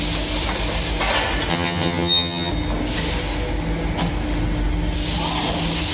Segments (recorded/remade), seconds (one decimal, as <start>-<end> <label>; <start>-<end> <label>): 0.0-1.5 recorded; 1.5-2.5 remade; 2.5-5.9 recorded